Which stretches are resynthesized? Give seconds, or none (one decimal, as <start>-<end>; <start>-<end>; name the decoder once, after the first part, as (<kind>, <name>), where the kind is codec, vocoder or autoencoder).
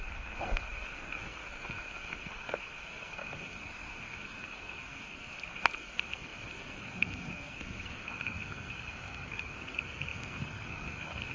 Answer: 0.0-11.3 (codec, SNAC)